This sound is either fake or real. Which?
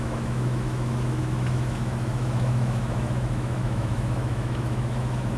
fake